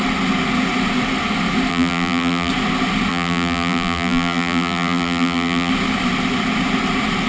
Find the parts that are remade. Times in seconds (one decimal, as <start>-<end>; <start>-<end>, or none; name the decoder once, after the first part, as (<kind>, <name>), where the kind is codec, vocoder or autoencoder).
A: 1.7-2.5 (vocoder, BigVGAN v2); 3.1-5.7